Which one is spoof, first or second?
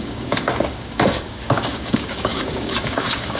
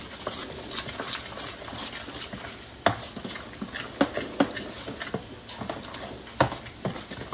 first